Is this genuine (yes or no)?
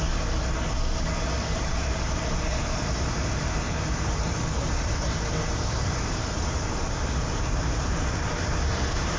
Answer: no